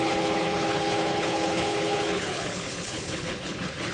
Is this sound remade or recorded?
remade